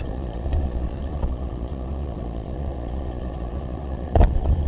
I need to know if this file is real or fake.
fake